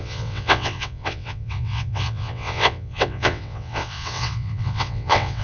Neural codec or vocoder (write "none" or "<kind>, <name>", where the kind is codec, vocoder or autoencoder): vocoder, WaveNeXt